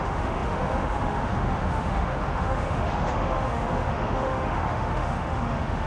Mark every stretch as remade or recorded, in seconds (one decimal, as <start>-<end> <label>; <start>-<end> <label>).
0.0-5.9 remade